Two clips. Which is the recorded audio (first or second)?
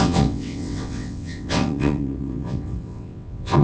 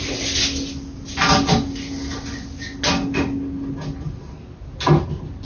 second